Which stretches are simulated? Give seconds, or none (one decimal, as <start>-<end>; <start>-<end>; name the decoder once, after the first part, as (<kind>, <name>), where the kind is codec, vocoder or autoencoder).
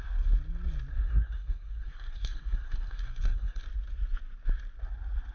0.9-3.6 (codec, SNAC)